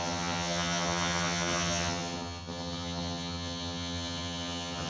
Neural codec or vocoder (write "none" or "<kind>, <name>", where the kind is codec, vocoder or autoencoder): vocoder, HiFi-GAN